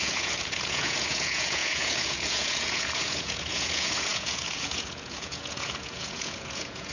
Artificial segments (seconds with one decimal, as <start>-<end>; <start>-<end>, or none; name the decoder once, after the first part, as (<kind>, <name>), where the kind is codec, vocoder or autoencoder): 0.0-6.9 (vocoder, Vocos)